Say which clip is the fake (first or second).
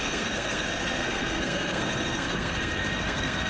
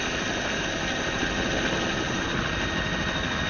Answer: first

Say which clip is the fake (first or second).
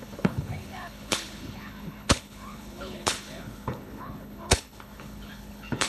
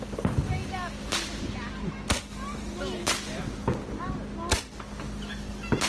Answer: first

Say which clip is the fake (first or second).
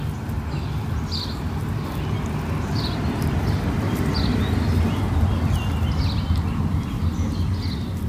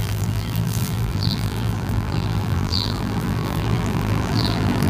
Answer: second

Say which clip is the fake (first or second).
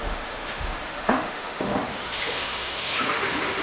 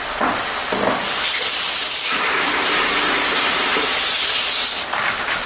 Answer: first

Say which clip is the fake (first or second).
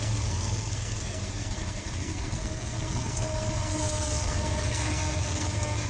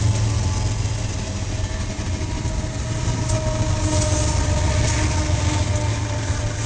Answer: first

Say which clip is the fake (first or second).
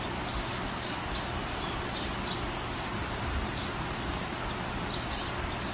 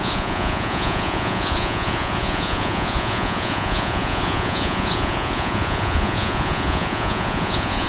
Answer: second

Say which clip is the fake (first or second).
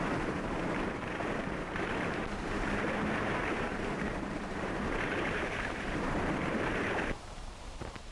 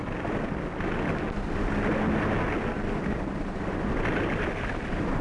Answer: first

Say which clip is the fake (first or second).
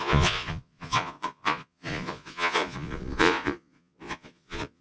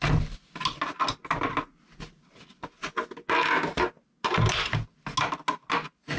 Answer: first